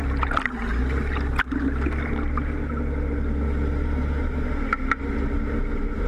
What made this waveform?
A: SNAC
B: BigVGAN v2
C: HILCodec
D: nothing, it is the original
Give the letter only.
D